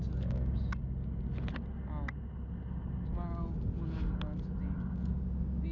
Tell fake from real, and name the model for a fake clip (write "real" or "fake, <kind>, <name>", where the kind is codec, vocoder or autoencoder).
real